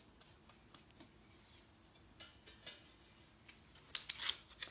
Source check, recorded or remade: recorded